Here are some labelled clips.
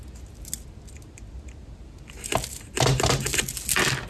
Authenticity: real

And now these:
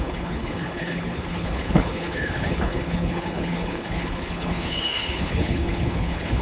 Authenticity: fake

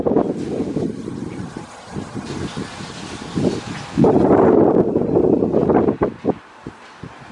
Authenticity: real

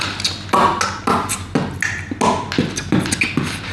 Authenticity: real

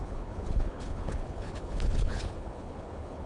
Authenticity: fake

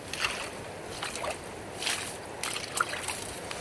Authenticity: real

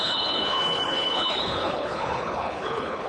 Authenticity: fake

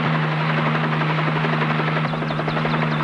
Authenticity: real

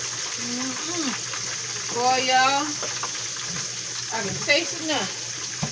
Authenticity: real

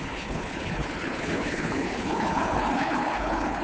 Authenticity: fake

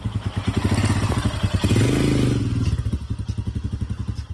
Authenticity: real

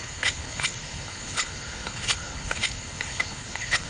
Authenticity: fake